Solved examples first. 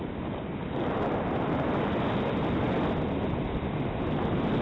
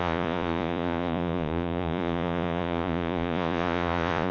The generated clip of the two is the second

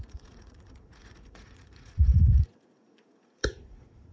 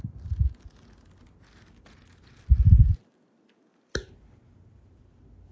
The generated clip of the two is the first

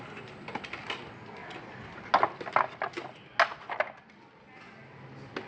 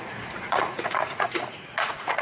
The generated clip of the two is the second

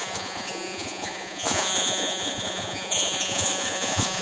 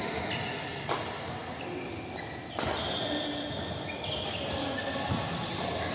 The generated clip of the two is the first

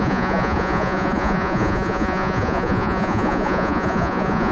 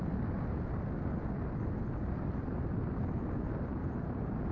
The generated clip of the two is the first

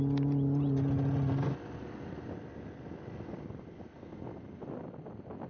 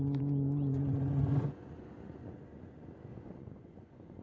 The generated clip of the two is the second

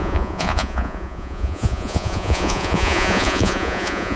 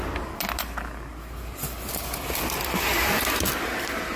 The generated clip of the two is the first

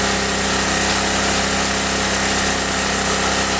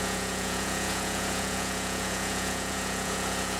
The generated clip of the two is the second